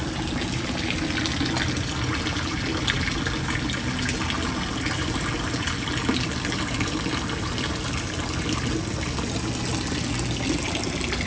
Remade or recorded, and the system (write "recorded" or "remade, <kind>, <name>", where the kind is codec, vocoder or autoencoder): recorded